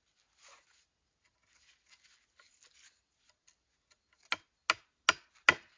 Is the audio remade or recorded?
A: recorded